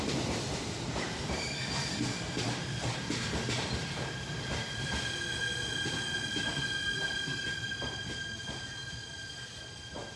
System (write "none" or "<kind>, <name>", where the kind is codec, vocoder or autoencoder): vocoder, BigVGAN v2